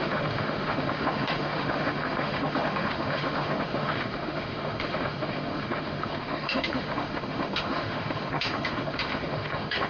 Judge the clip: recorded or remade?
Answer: remade